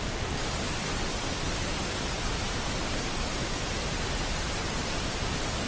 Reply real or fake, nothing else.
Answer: fake